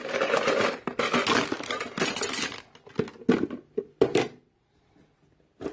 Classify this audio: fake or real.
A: real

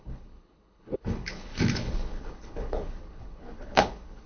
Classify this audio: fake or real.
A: fake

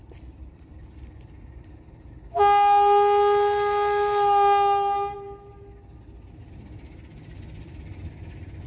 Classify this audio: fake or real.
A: real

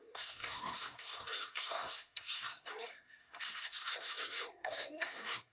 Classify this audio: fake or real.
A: fake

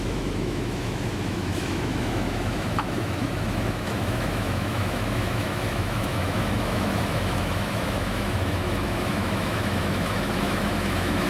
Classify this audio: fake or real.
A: fake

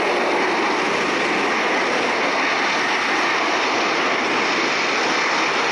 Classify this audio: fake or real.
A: real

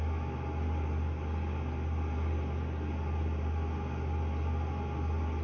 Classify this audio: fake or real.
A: real